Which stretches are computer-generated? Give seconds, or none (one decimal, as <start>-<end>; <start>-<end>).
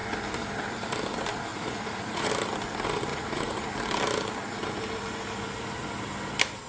1.5-2.3; 3.1-3.7